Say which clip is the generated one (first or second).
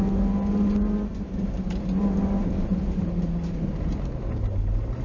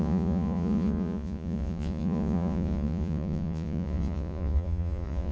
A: second